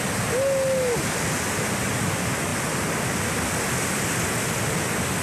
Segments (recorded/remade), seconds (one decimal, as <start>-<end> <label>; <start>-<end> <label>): 0.0-5.2 recorded